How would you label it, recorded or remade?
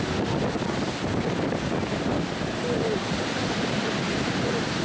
recorded